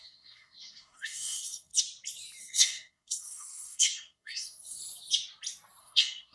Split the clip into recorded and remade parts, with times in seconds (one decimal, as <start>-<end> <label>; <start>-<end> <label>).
0.0-1.7 remade; 1.7-2.4 recorded; 2.4-4.8 remade; 4.8-5.8 recorded; 5.8-6.3 remade